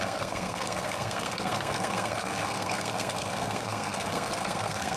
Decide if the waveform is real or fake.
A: fake